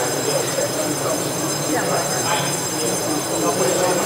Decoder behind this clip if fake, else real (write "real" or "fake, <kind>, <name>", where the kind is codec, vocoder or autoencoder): fake, vocoder, BigVGAN v2